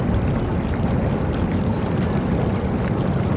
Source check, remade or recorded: recorded